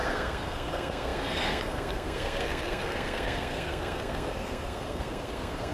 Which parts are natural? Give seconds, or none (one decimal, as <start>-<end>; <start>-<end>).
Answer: none